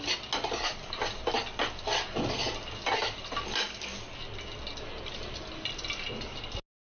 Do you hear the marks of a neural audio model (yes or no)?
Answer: no